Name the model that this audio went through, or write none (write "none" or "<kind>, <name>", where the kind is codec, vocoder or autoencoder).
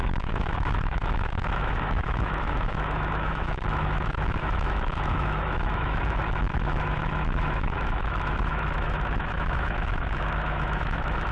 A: autoencoder, DAC-VAE